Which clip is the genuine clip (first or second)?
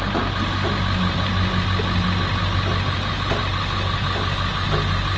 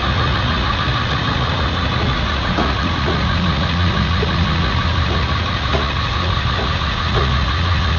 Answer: first